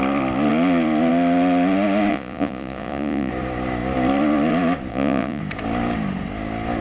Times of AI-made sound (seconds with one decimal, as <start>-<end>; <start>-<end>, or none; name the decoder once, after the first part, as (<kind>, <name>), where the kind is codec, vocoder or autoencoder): 2.1-3.3 (vocoder, Vocos); 4.9-5.4